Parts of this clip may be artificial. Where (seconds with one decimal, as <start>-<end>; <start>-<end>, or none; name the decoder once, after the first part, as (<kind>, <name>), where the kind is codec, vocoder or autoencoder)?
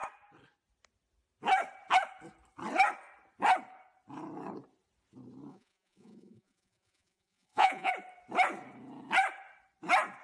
5.5-7.9 (vocoder, Vocos)